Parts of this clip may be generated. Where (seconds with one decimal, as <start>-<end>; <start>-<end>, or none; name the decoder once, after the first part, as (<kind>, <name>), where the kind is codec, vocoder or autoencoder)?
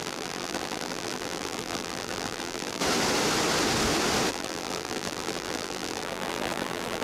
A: 0.0-2.8 (vocoder, BigVGAN v2); 4.3-7.0